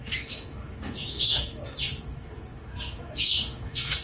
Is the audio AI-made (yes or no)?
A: yes